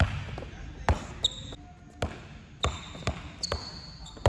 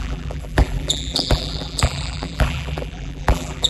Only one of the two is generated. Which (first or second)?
second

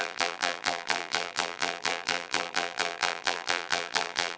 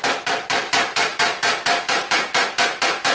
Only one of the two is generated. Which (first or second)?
first